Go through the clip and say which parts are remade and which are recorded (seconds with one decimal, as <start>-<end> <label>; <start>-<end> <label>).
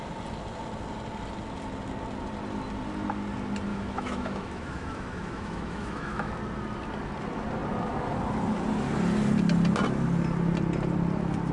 0.0-3.7 recorded; 3.7-6.3 remade; 6.3-11.5 recorded